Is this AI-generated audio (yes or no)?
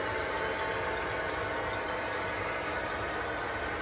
no